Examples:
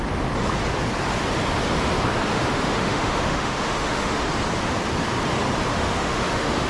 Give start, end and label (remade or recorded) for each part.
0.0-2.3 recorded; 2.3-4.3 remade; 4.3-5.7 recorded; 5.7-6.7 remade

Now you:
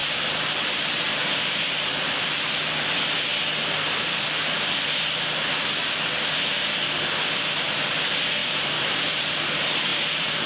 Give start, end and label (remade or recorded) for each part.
0.0-1.5 remade; 1.5-8.4 recorded; 8.4-9.2 remade; 9.2-9.9 recorded; 9.9-10.5 remade

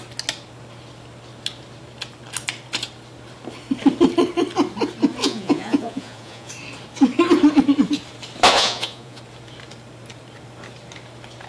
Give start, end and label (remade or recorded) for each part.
0.0-5.2 recorded; 5.2-6.5 remade; 6.5-8.5 recorded; 8.5-9.2 remade; 9.2-11.5 recorded

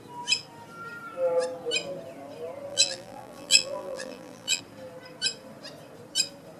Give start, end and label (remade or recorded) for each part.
0.0-2.7 recorded; 2.7-4.6 remade; 4.6-6.6 recorded

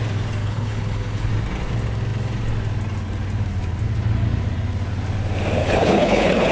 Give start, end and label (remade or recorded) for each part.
0.0-0.4 recorded; 0.4-1.3 remade; 1.3-5.6 recorded; 5.6-6.5 remade

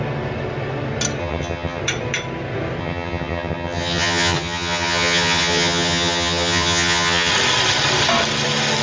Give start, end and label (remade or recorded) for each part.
0.0-1.2 recorded; 1.2-1.8 remade; 1.8-2.8 recorded; 2.8-7.3 remade; 7.3-8.8 recorded